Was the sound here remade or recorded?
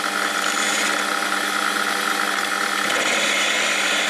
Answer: recorded